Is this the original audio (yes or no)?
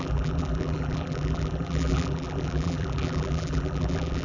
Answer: no